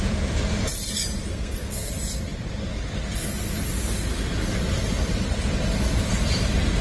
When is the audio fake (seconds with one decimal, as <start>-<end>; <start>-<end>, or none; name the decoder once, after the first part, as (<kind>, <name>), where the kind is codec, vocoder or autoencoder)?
1.3-1.9 (codec, SNAC)